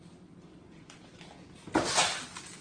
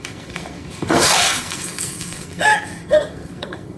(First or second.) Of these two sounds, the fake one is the second